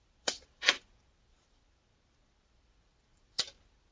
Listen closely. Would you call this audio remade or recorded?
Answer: remade